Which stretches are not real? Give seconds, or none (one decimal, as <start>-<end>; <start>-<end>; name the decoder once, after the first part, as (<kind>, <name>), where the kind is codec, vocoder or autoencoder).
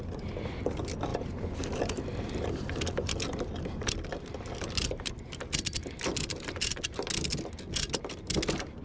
none